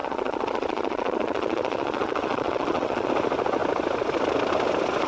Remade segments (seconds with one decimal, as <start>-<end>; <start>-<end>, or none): 0.0-3.1